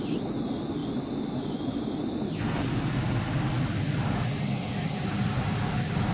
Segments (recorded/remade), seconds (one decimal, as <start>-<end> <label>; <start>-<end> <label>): 0.0-6.1 recorded